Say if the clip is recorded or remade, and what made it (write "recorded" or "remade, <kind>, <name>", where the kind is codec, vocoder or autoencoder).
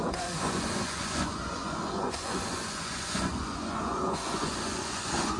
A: remade, vocoder, Vocos